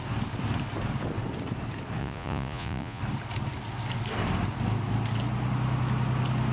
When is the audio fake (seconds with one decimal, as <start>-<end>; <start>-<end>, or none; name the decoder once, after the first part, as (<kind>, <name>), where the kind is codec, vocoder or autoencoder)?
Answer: 2.0-3.0 (vocoder, Vocos)

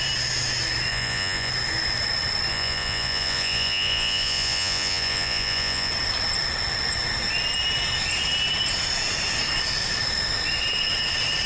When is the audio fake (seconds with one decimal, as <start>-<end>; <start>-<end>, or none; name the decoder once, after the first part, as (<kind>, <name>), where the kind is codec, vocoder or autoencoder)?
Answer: 0.9-1.5 (vocoder, Vocos); 2.5-5.9

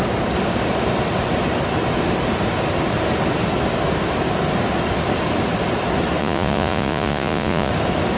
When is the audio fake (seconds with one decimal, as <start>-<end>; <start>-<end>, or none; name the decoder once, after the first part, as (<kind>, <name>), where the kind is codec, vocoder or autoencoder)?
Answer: 6.2-7.7 (vocoder, Vocos)

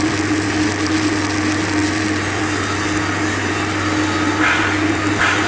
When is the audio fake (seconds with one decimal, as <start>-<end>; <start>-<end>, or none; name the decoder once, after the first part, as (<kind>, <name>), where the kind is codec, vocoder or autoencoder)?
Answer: none

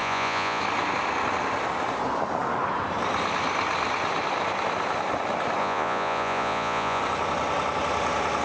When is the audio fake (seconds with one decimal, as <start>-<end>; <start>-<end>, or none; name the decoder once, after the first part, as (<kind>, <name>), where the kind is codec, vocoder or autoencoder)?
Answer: 0.0-0.6 (vocoder, Vocos); 5.6-7.0

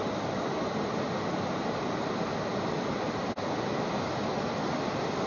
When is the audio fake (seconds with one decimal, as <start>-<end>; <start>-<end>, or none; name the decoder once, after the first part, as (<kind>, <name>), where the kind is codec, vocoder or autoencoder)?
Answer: none

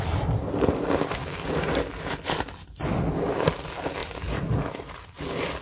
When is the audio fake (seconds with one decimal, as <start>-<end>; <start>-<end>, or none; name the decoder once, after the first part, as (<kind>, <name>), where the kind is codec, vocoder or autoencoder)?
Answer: none

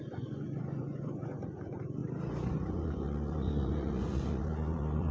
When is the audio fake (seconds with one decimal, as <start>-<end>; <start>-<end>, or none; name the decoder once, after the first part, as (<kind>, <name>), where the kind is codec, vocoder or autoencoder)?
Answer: 0.0-2.0 (vocoder, Vocos); 2.7-5.1